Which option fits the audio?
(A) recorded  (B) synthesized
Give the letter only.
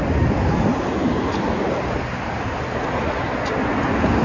A